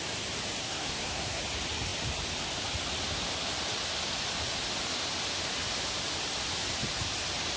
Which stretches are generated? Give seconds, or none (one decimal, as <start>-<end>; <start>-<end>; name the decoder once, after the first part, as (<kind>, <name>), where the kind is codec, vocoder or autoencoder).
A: 0.6-1.4 (codec, SNAC)

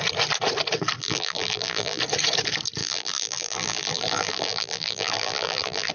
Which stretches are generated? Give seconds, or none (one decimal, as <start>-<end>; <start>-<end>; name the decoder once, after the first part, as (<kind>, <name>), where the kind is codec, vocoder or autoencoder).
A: 1.0-2.0 (vocoder, BigVGAN v2); 2.8-5.9

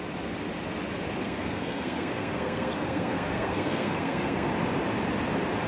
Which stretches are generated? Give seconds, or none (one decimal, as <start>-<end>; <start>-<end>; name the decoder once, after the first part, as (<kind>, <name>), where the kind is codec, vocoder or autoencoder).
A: 1.2-4.5 (codec, SNAC)